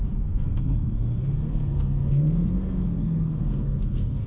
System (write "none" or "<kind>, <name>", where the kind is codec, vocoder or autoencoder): codec, SNAC